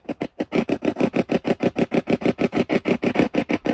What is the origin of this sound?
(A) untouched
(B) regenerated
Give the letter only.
B